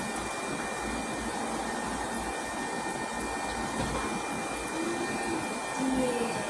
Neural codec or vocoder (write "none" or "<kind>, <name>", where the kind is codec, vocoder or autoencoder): none